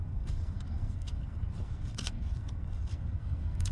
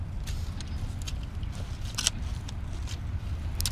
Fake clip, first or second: first